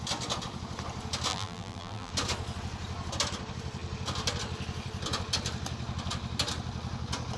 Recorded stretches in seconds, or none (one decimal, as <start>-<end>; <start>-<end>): 0.0-1.3; 2.1-7.4